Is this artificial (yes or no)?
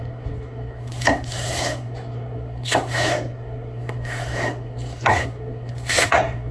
yes